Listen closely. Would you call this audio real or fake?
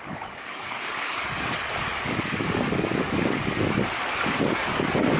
fake